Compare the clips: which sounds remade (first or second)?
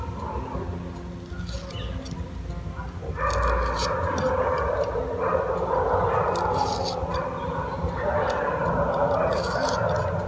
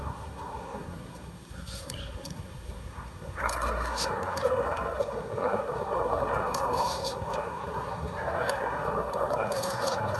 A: second